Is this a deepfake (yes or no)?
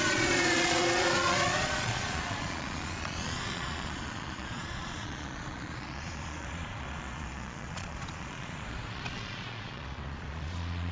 yes